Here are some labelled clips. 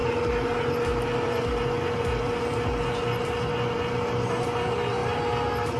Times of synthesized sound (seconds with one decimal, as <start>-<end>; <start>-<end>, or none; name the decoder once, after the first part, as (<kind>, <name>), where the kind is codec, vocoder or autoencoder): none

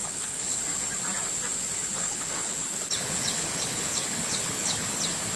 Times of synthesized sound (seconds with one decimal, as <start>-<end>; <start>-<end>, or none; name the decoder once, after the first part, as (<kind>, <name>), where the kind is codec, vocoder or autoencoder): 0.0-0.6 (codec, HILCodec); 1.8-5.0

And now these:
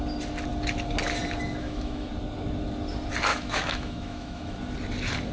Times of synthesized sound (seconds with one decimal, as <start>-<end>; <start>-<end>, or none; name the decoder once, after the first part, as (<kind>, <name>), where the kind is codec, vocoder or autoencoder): 1.6-2.1 (autoencoder, DAC-VAE); 3.3-4.6

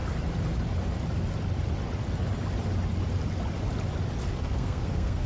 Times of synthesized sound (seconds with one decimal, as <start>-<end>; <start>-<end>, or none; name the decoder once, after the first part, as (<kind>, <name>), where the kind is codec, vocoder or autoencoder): 4.3-5.3 (codec, SNAC)

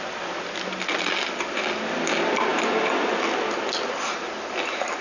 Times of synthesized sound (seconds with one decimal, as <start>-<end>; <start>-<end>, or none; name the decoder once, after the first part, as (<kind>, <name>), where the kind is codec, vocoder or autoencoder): none

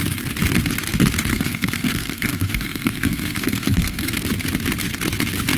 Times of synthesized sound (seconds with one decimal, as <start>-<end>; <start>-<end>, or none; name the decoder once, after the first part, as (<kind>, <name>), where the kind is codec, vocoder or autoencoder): 1.3-4.1 (codec, SNAC)

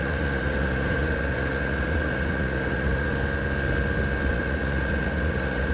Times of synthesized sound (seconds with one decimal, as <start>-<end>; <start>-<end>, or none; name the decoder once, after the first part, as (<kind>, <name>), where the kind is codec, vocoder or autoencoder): 0.0-3.1 (vocoder, Vocos); 4.3-5.7